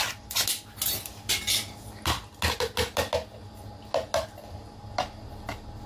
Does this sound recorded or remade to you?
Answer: recorded